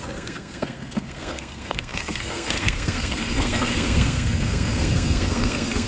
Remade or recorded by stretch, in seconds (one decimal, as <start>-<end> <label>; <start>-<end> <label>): 0.0-5.9 remade